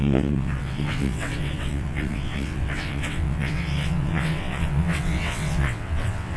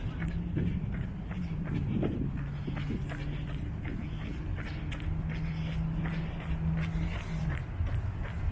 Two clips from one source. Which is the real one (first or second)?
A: second